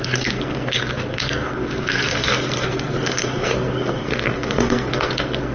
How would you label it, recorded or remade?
remade